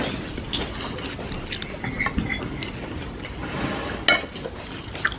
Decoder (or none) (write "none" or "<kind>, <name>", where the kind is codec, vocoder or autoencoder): none